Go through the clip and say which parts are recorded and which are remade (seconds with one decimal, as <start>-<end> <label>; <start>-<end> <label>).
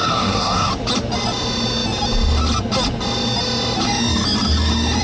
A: 0.0-0.7 remade; 0.7-5.0 recorded